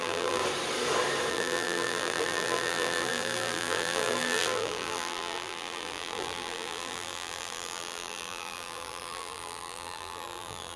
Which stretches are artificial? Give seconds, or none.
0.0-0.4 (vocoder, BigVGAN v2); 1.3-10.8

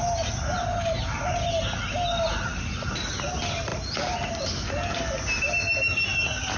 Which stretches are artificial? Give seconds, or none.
none